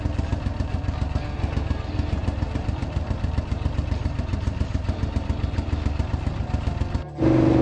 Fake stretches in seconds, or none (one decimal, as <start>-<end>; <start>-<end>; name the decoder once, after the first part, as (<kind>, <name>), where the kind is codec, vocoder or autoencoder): 2.2-6.6 (vocoder, BigVGAN v2)